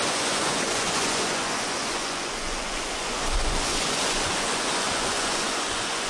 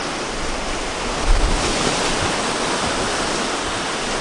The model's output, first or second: first